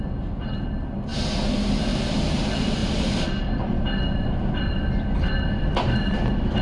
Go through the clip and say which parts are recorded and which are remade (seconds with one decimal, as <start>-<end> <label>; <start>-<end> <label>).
0.0-6.6 recorded